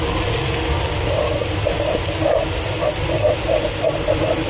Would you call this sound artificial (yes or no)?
no